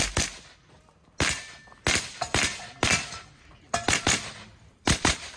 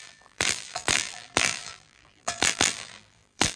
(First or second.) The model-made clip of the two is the second